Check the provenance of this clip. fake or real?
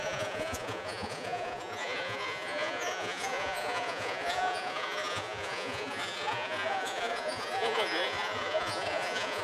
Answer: fake